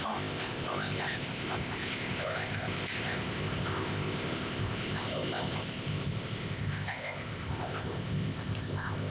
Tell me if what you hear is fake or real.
fake